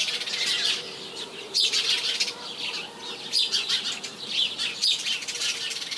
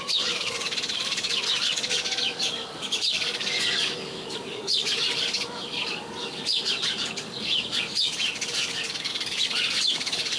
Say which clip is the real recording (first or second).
first